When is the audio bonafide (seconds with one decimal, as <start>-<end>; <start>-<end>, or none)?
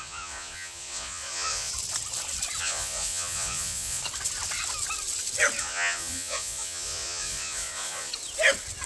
1.7-2.6; 4.0-5.6; 8.1-8.9